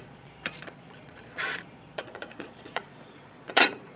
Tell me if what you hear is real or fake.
fake